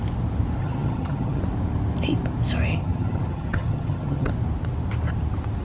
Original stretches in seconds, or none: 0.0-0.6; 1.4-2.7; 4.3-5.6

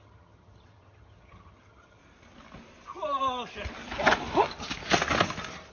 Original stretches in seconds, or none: 2.0-5.7

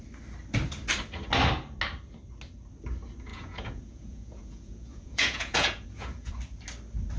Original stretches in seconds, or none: 0.0-3.3; 6.3-7.2

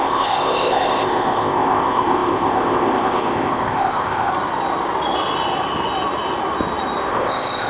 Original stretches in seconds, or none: 4.3-7.1